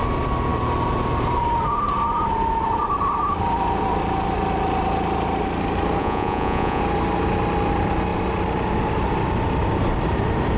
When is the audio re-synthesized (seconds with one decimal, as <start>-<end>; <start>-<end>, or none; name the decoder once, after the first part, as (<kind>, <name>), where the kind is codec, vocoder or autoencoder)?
6.0-6.8 (vocoder, Vocos)